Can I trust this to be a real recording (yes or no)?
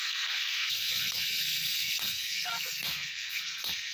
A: no